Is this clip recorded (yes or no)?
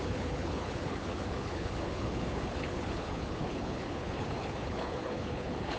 no